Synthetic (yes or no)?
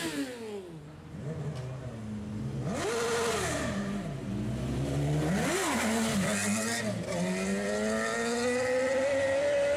no